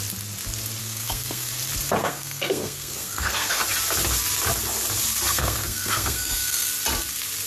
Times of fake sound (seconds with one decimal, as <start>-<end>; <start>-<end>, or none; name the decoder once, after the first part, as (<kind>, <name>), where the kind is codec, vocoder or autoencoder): 0.8-1.5 (codec, SNAC); 2.0-3.6; 5.3-6.7